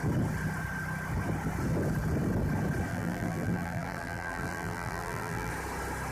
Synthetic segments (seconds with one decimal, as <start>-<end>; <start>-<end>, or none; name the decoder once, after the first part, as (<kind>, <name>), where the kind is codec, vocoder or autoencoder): 2.9-5.5 (vocoder, BigVGAN v2)